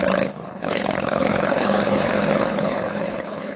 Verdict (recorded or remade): remade